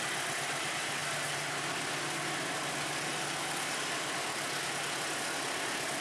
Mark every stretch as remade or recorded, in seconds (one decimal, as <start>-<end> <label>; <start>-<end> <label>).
0.0-6.0 recorded